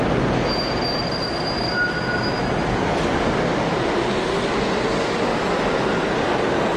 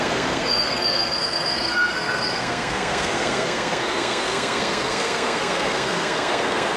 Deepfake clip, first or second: second